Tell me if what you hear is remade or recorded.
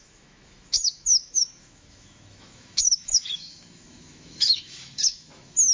remade